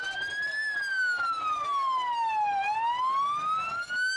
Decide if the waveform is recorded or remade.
recorded